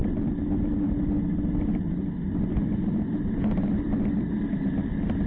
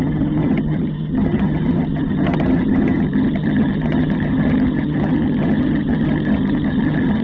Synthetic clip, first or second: second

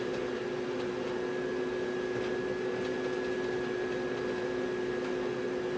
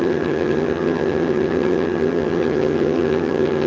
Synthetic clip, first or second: second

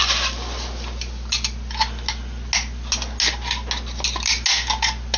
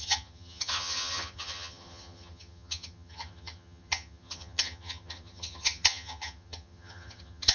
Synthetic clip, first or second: second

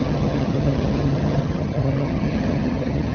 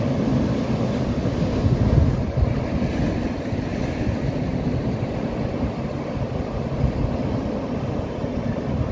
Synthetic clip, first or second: first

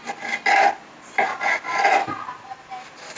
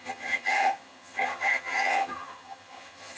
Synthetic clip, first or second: second